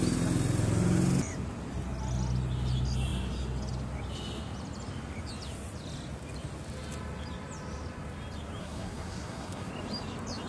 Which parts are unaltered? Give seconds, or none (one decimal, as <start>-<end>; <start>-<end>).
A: 0.0-8.6; 9.7-10.5